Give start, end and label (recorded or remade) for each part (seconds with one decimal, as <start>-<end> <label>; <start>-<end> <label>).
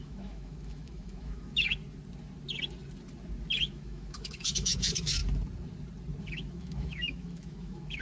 0.0-1.8 remade; 1.8-3.6 recorded; 3.6-5.2 remade; 5.2-6.2 recorded; 6.2-8.0 remade